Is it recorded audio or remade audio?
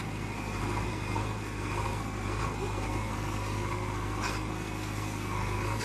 remade